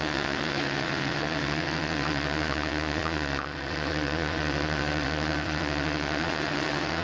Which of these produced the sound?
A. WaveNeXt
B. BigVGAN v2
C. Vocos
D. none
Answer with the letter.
A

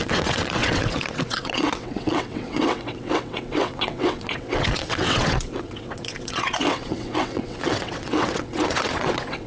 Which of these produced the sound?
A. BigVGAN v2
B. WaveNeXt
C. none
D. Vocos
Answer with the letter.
B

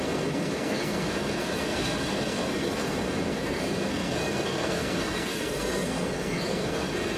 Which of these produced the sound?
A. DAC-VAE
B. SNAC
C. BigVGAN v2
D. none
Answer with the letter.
B